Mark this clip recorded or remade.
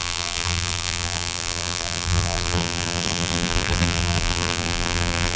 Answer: remade